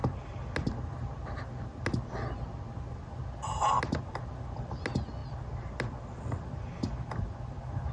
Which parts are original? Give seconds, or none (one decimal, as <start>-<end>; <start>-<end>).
0.0-7.9